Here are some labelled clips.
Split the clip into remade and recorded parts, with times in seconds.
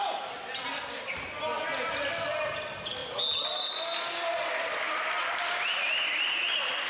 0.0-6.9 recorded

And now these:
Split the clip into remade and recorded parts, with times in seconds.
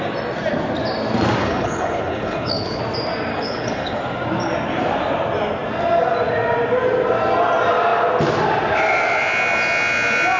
0.0-1.4 recorded; 1.4-2.8 remade; 2.8-3.3 recorded; 3.3-4.0 remade; 4.0-10.4 recorded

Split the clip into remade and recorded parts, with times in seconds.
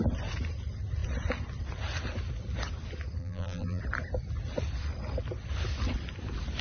0.0-3.2 recorded; 3.2-3.8 remade; 3.8-6.6 recorded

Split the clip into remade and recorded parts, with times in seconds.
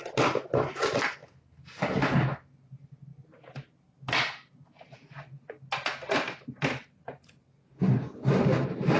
0.0-9.0 recorded